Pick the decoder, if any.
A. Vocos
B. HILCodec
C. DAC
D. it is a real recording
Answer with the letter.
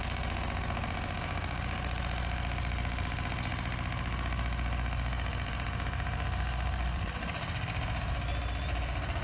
D